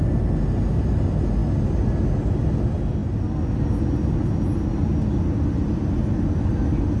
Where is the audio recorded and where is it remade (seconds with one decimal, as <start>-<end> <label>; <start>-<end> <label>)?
0.0-7.0 recorded